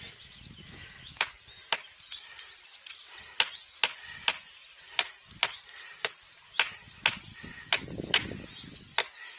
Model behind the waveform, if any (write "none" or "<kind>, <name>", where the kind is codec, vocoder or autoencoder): none